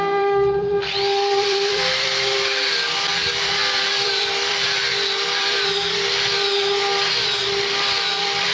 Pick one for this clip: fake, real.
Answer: fake